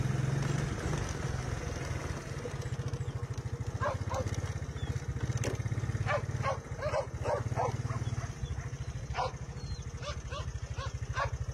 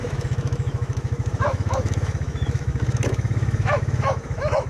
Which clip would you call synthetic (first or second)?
second